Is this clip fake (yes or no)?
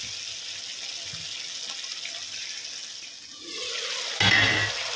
no